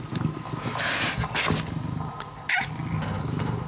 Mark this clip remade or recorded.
recorded